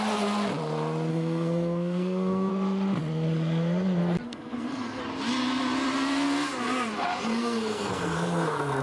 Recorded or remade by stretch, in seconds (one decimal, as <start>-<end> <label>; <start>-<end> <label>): 0.0-1.1 recorded; 1.1-2.5 remade; 2.5-4.2 recorded; 4.2-5.0 remade; 5.0-7.3 recorded; 7.3-8.8 remade